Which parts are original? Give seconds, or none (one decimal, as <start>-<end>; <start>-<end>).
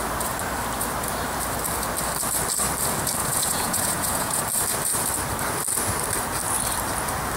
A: 0.0-3.2; 4.4-7.4